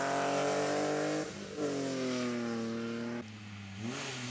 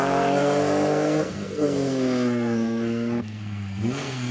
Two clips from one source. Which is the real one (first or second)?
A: first